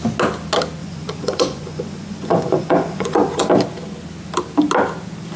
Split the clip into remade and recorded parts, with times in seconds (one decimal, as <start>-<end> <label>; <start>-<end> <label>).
0.0-0.8 recorded; 0.8-3.5 remade; 3.5-5.4 recorded